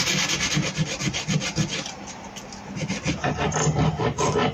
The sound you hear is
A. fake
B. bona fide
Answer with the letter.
B